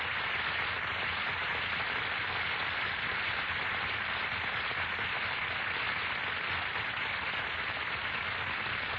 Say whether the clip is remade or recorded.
recorded